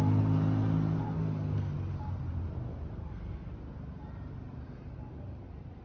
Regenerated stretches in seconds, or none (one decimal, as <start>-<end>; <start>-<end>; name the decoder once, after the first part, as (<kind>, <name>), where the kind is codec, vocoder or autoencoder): 1.0-1.7 (codec, SNAC); 3.0-3.5